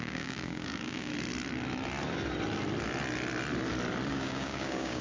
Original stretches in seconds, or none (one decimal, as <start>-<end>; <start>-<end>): 1.1-4.1

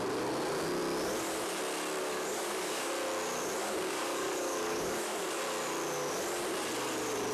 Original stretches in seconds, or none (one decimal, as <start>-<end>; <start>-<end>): 0.0-2.0; 2.9-3.6; 5.4-7.3

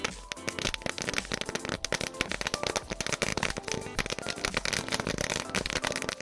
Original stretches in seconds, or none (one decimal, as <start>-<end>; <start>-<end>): 0.0-6.2

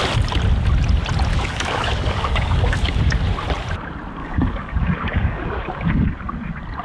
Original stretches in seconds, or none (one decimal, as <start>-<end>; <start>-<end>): 0.0-1.3; 3.0-4.2; 6.1-6.8